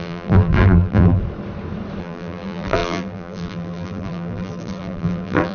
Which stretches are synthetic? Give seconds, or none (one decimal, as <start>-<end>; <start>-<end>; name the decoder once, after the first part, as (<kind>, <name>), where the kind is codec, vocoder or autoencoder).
0.0-1.2 (vocoder, BigVGAN v2); 2.0-5.5